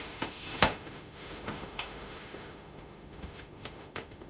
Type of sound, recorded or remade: remade